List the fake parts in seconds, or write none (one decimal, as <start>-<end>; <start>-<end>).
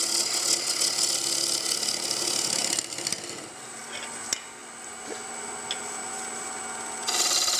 none